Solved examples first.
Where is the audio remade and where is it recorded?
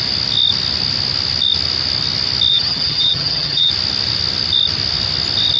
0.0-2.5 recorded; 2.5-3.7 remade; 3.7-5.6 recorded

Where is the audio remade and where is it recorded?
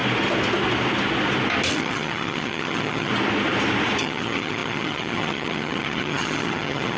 0.0-1.7 recorded; 1.7-3.1 remade; 3.1-4.0 recorded; 4.0-7.0 remade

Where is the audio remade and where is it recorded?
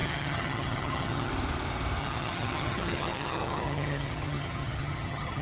0.0-1.3 remade; 1.3-2.0 recorded; 2.0-5.4 remade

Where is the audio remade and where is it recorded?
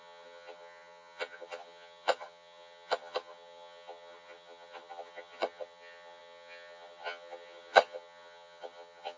0.0-9.2 remade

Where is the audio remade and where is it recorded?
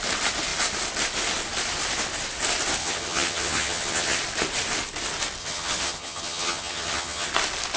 0.0-2.8 recorded; 2.8-4.2 remade; 4.2-5.4 recorded; 5.4-7.3 remade; 7.3-7.8 recorded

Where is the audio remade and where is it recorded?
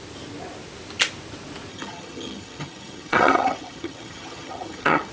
0.0-1.7 recorded; 1.7-5.1 remade